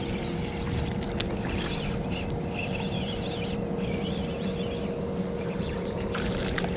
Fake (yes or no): no